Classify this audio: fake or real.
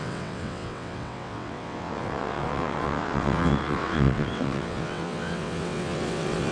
fake